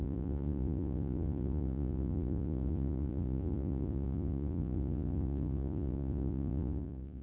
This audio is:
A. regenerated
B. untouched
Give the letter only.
A